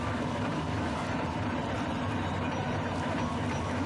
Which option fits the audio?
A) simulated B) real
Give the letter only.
B